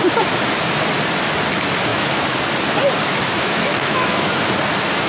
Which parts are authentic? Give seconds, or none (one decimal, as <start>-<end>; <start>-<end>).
0.0-1.9; 2.4-3.1; 4.3-5.1